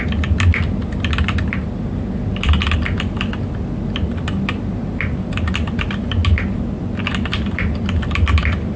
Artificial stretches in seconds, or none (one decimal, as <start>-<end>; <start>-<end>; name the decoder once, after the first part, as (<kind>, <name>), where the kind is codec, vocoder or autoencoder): none